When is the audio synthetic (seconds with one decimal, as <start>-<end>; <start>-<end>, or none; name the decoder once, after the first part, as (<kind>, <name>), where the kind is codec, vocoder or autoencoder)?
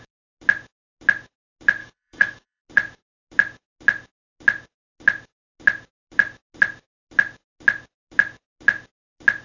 1.8-2.6 (autoencoder, DAC-VAE)